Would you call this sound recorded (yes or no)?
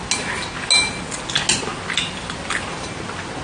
yes